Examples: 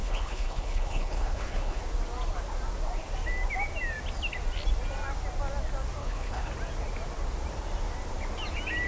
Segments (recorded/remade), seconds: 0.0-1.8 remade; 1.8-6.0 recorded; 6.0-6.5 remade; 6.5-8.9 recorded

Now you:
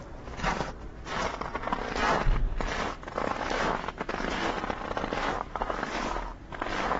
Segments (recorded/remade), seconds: 0.0-3.3 recorded; 3.3-4.1 remade; 4.1-5.2 recorded; 5.2-6.3 remade; 6.3-7.0 recorded

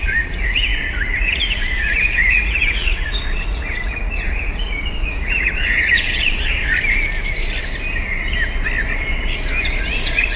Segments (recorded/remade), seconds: 0.0-6.6 remade; 6.6-9.8 recorded; 9.8-10.4 remade

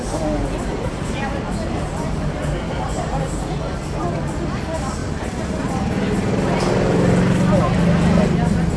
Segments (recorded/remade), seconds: 0.0-8.8 recorded

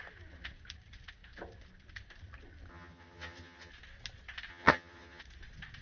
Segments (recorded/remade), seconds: 0.0-2.7 recorded; 2.7-3.7 remade; 3.7-4.5 recorded; 4.5-5.2 remade; 5.2-5.8 recorded

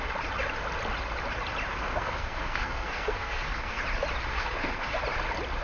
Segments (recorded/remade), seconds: 0.0-1.7 recorded; 1.7-3.8 remade; 3.8-4.3 recorded; 4.3-5.0 remade; 5.0-5.6 recorded

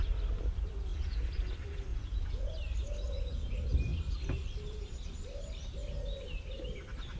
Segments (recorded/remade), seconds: 0.0-0.9 recorded; 0.9-1.5 remade; 1.5-1.9 recorded; 1.9-2.5 remade; 2.5-7.2 recorded

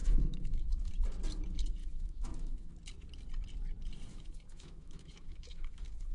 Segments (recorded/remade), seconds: 0.0-0.9 remade; 0.9-1.8 recorded; 1.8-2.7 remade; 2.7-4.1 recorded; 4.1-6.1 remade